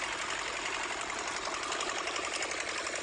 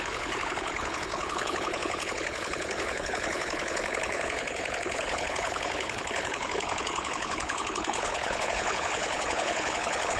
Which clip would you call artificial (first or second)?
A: second